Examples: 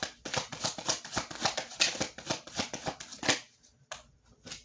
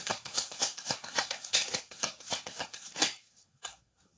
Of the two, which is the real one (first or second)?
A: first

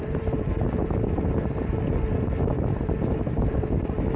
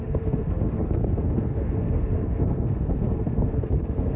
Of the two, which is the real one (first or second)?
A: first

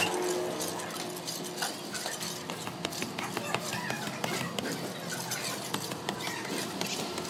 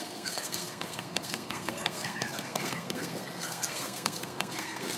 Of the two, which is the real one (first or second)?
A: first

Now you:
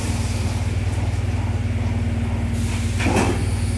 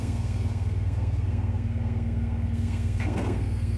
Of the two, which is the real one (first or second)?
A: first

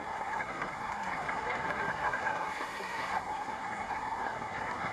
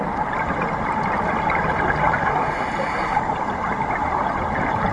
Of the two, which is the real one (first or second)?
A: second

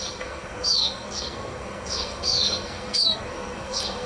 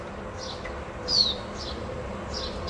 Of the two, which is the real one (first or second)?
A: second